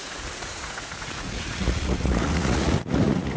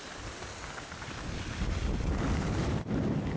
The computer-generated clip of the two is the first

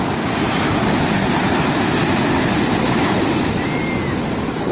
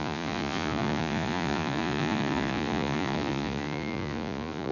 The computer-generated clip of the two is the second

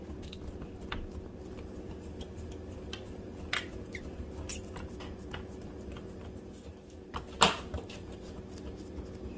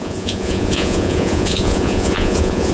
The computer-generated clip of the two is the second